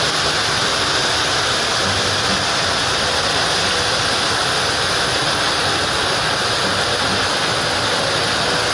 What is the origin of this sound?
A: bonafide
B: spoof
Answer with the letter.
A